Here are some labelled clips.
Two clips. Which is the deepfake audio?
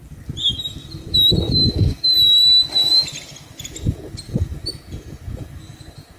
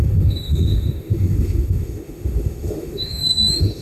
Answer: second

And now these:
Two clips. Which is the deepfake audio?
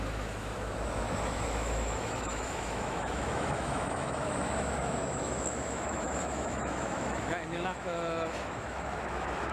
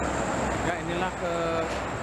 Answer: first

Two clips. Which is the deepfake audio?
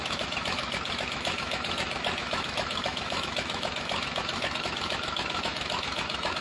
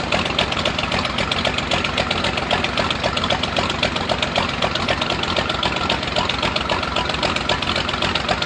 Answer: first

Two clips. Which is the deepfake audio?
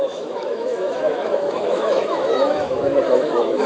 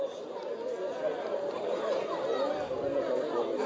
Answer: first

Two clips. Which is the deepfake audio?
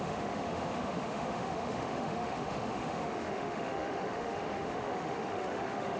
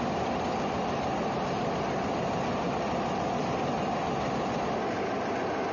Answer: first